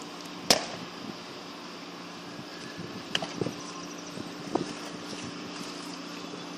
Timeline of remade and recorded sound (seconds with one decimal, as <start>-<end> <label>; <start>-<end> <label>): 0.0-2.5 recorded; 2.5-6.6 remade